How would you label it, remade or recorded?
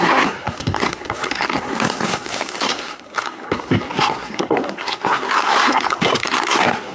remade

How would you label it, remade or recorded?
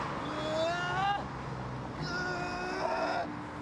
recorded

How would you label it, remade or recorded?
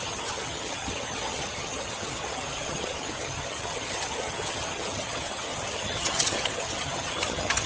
remade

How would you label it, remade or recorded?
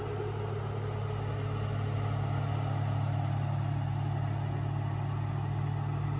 recorded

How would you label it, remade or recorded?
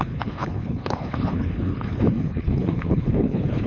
remade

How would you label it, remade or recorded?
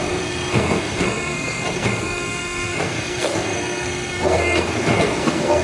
remade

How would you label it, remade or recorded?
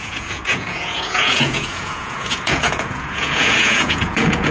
remade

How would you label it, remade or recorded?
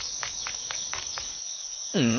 remade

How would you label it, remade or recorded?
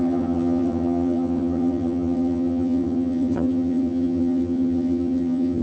remade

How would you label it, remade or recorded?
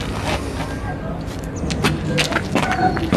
recorded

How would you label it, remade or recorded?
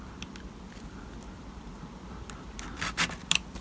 recorded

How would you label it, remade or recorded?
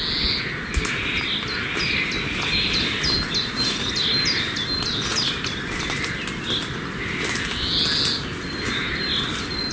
recorded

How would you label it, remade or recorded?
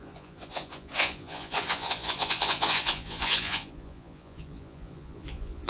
remade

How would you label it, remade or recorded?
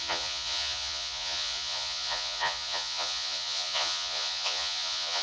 remade